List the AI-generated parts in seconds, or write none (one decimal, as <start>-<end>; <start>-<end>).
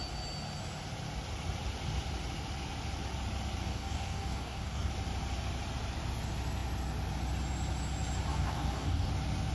3.6-4.9; 8.3-9.1